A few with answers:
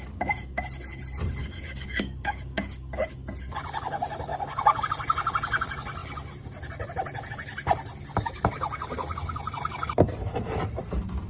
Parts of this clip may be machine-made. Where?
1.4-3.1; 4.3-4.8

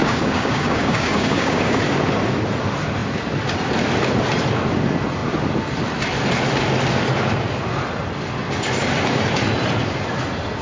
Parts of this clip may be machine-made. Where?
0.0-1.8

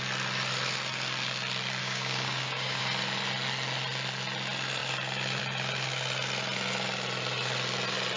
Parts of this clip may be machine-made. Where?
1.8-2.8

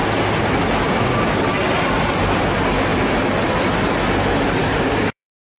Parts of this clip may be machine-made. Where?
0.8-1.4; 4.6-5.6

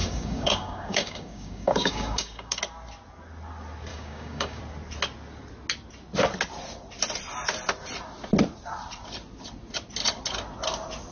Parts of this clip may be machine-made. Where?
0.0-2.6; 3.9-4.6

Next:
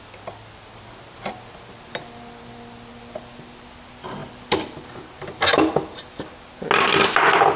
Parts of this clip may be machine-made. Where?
none